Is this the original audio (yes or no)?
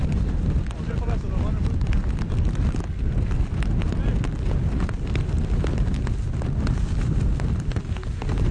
yes